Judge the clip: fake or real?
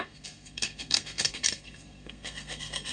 fake